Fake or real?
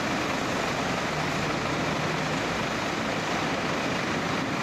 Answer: real